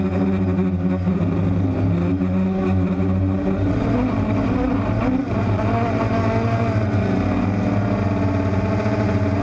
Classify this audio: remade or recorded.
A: recorded